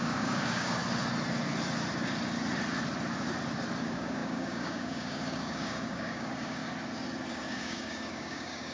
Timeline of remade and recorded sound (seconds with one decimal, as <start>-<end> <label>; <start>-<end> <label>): 0.0-0.8 remade; 0.8-3.8 recorded; 3.8-6.6 remade; 6.6-7.3 recorded; 7.3-8.7 remade